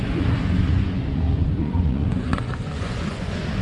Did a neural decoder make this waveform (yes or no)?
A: yes